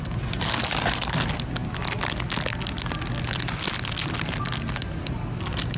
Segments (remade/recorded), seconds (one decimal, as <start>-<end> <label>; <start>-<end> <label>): 0.0-5.8 recorded